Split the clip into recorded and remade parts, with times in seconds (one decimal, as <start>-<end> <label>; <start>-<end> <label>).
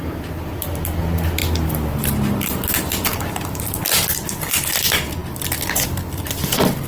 0.0-1.4 recorded; 1.4-2.0 remade; 2.0-3.1 recorded; 3.1-3.7 remade; 3.7-5.2 recorded; 5.2-6.4 remade; 6.4-6.9 recorded